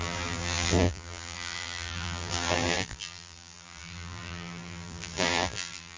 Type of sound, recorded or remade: remade